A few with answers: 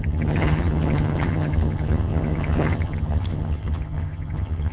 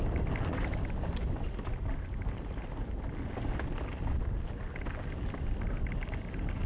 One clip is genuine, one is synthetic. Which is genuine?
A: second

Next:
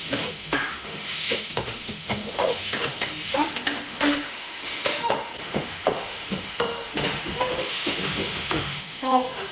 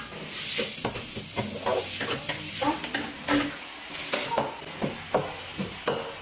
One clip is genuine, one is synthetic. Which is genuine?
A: second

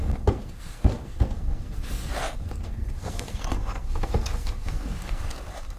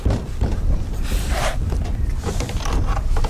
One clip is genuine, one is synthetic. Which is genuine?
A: second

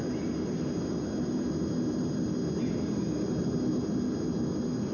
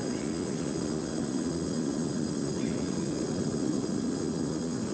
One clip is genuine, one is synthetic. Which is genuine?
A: first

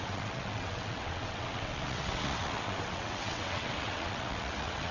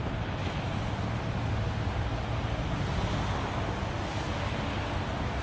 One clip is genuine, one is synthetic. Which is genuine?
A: second